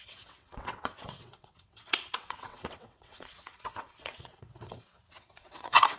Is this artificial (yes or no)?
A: yes